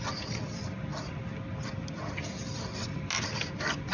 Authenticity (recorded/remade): recorded